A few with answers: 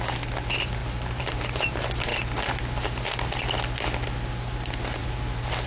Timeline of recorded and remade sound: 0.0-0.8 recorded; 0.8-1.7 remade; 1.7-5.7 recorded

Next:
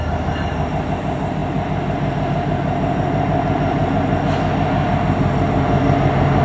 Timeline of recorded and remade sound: 0.0-6.4 recorded

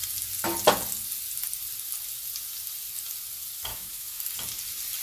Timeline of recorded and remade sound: 0.0-3.7 recorded; 3.7-4.2 remade; 4.2-5.0 recorded

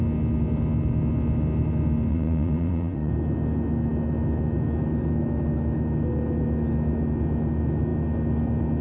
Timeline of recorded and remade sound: 0.0-2.1 recorded; 2.1-3.1 remade; 3.1-8.8 recorded